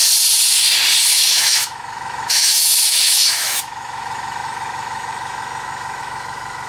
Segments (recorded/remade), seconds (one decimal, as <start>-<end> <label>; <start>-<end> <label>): 0.0-1.1 recorded; 1.1-6.7 remade